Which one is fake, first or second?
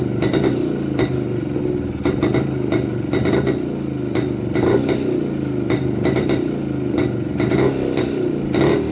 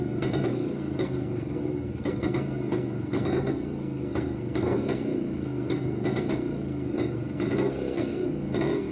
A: second